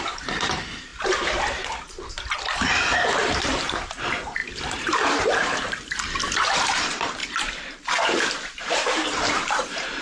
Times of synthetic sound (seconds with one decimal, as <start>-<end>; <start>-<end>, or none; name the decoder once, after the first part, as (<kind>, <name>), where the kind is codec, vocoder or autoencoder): 0.0-0.9 (vocoder, BigVGAN v2); 3.1-7.2; 8.6-10.0